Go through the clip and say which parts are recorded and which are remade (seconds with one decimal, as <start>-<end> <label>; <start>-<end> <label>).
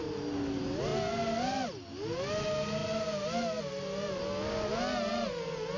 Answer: 0.0-5.8 recorded